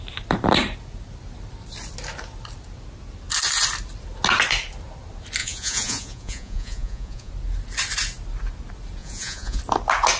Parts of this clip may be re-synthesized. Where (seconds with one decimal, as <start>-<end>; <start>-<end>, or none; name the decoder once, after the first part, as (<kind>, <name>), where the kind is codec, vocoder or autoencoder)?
5.4-7.3 (vocoder, Vocos); 9.0-9.6